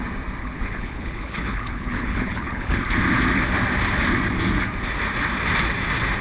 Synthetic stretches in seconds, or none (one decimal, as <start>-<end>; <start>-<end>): 0.4-2.8